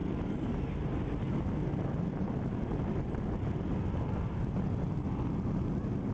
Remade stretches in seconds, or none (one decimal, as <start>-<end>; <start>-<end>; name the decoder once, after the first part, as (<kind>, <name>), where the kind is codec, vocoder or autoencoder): none